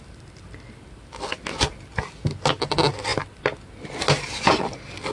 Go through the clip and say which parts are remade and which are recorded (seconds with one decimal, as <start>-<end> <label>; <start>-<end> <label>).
0.0-5.1 recorded